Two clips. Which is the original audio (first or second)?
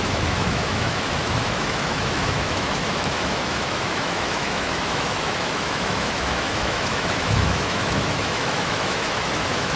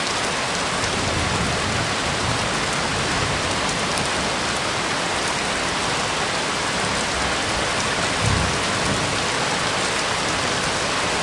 second